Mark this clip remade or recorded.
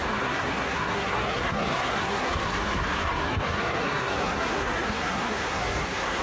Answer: remade